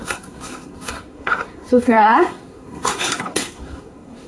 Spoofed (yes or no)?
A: yes